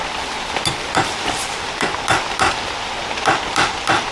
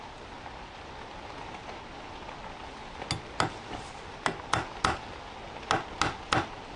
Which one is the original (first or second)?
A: second